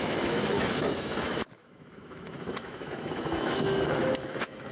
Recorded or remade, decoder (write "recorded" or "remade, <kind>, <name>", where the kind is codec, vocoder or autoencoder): remade, autoencoder, DAC-VAE